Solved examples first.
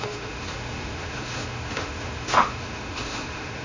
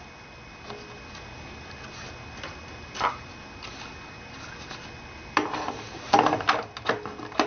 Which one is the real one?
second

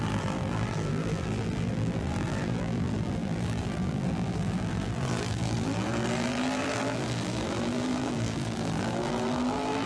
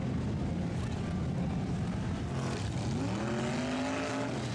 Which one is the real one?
second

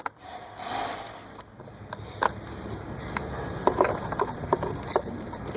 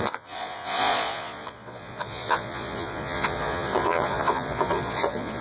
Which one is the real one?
first